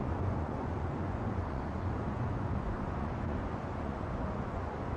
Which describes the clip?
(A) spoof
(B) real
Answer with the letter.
A